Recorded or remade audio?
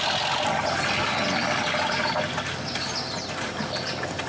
recorded